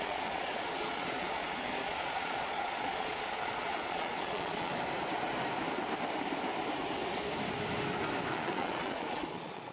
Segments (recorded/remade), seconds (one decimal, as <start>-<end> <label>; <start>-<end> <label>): 0.0-4.7 remade; 4.7-8.3 recorded; 8.3-9.7 remade